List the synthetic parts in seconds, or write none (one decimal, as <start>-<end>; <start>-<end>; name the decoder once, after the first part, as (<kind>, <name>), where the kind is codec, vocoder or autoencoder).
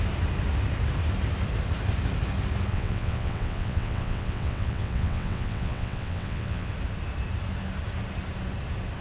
2.7-6.7 (vocoder, WaveNeXt)